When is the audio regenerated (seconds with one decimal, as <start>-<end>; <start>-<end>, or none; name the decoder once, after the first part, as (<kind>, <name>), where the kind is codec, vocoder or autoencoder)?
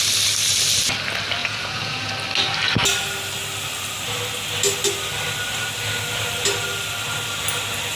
1.4-2.1 (vocoder, Vocos)